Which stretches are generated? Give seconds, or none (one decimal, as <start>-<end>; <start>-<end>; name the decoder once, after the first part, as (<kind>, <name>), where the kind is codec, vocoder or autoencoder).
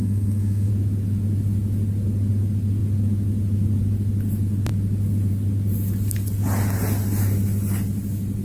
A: 0.0-0.7 (autoencoder, DAC-VAE)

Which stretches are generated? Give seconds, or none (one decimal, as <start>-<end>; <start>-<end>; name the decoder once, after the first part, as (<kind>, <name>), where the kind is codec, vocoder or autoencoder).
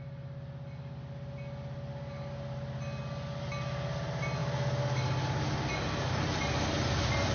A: none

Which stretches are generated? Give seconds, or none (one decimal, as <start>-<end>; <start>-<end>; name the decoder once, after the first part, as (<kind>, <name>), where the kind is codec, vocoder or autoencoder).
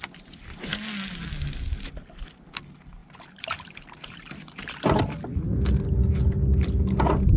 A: 3.0-5.0 (vocoder, BigVGAN v2)